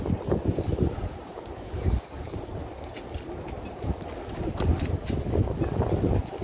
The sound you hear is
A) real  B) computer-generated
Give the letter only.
A